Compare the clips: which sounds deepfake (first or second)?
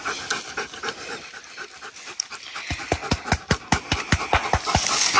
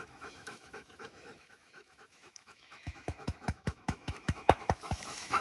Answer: second